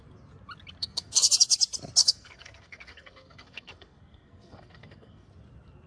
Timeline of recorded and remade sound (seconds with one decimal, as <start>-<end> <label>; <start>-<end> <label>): 0.0-0.8 recorded; 0.8-1.3 remade; 1.3-2.0 recorded; 2.0-5.3 remade; 5.3-5.9 recorded